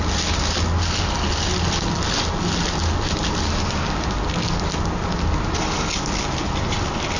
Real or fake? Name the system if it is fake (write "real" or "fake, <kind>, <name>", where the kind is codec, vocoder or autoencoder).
real